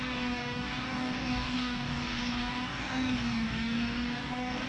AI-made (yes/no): yes